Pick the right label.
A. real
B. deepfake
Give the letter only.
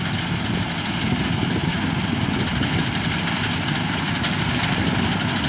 A